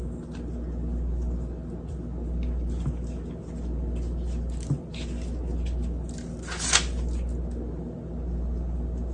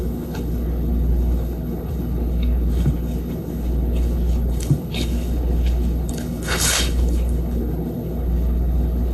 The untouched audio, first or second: first